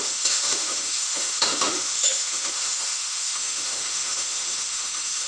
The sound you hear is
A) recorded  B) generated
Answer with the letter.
B